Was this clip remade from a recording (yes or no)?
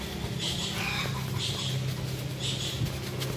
no